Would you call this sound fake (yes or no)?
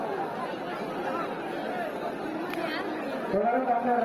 no